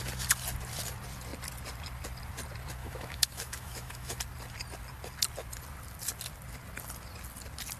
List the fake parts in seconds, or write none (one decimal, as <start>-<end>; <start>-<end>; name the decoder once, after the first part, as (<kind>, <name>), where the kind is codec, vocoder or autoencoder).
2.8-4.2 (autoencoder, DAC-VAE)